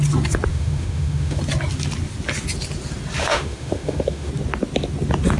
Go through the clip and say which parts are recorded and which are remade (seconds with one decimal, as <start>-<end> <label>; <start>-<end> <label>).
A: 0.0-0.5 recorded; 0.5-1.4 remade; 1.4-3.2 recorded; 3.2-4.3 remade; 4.3-5.4 recorded